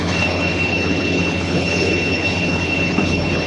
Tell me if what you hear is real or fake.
fake